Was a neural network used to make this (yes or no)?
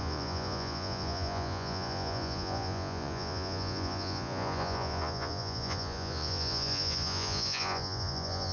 yes